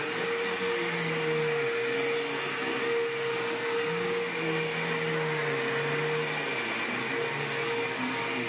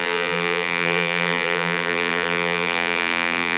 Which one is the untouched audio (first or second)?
first